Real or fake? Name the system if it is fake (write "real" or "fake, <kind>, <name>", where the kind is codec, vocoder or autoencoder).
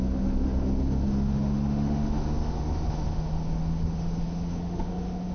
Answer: fake, autoencoder, DAC-VAE